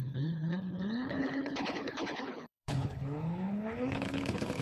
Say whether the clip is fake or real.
fake